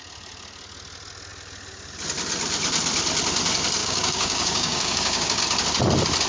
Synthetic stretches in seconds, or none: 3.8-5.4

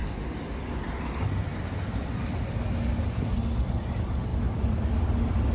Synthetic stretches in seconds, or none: none

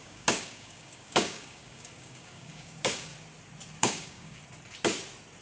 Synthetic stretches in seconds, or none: 0.0-3.1; 3.8-4.4

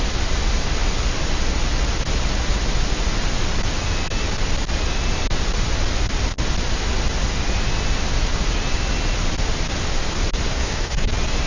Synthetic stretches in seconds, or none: 10.5-11.1

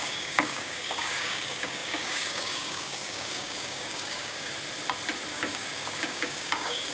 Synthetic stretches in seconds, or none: 0.0-4.5; 5.3-6.9

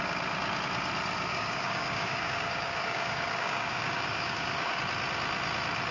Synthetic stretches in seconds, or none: 1.3-4.8

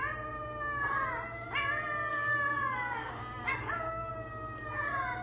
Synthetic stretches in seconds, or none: 2.1-3.1; 3.5-4.1